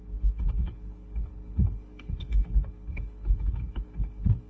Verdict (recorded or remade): remade